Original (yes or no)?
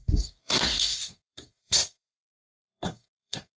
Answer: no